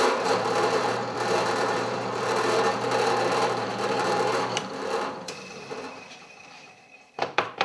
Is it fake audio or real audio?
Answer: fake